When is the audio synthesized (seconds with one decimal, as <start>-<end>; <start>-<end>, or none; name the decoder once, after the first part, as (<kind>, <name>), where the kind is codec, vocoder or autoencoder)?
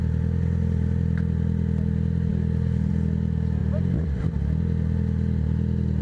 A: none